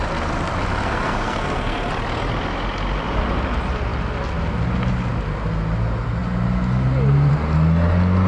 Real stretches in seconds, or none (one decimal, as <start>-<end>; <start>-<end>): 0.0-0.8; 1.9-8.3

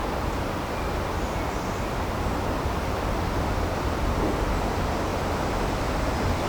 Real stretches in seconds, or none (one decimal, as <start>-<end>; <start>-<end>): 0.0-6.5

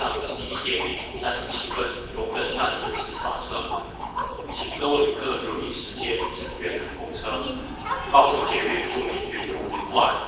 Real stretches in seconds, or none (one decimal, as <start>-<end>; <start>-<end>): 7.1-8.2

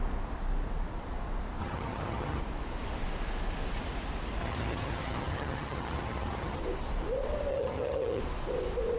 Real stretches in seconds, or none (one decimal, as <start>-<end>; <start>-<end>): 0.0-1.6; 2.4-4.4; 6.6-7.5; 8.2-9.0